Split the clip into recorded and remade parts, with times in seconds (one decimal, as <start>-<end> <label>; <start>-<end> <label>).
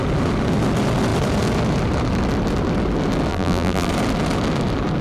0.0-3.3 recorded; 3.3-3.9 remade; 3.9-5.0 recorded